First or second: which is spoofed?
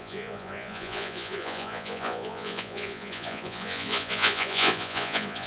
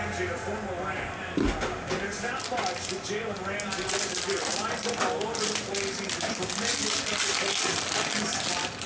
first